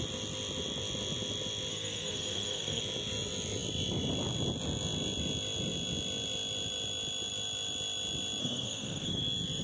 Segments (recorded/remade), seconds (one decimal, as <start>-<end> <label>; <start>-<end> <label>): 0.0-1.7 recorded; 1.7-2.8 remade; 2.8-8.4 recorded; 8.4-9.2 remade; 9.2-9.6 recorded